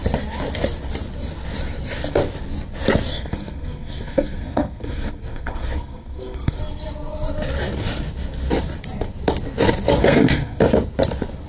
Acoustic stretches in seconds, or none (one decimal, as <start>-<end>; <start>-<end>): 0.0-3.1; 6.6-10.0; 10.6-11.5